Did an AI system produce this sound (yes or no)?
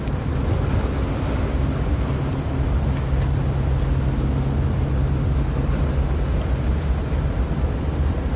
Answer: no